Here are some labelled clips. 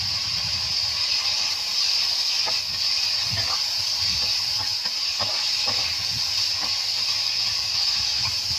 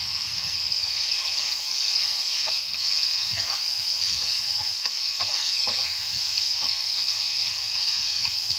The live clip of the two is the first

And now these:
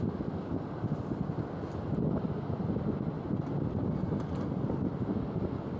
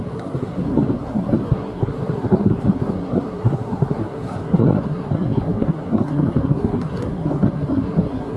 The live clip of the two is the first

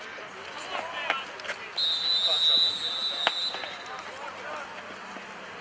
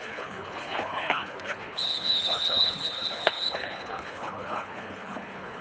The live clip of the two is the first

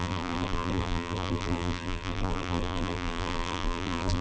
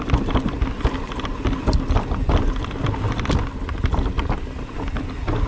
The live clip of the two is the second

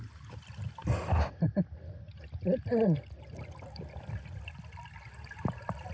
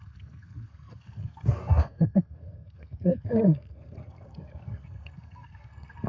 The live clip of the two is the first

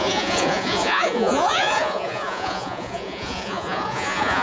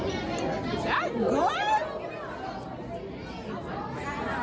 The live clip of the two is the second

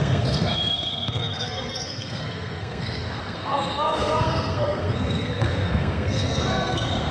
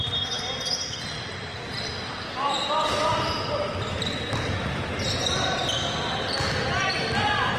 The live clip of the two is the second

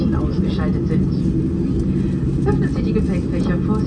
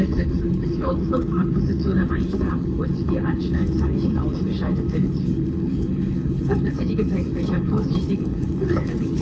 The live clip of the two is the first